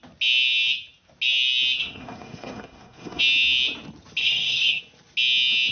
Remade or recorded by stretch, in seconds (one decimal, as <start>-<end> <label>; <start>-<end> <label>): 0.0-1.8 recorded; 1.8-3.2 remade; 3.2-4.2 recorded; 4.2-4.8 remade; 4.8-5.7 recorded